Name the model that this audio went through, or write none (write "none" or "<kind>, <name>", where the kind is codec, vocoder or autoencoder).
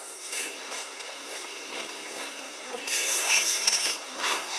codec, SNAC